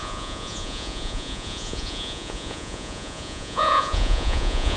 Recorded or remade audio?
remade